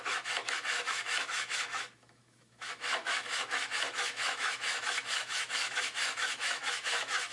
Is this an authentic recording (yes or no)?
no